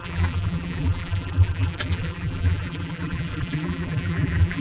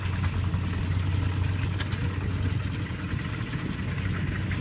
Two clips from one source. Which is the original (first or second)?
second